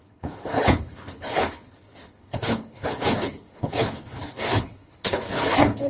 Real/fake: fake